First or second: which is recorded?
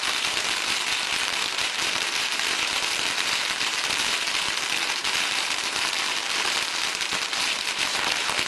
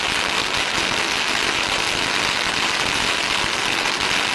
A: second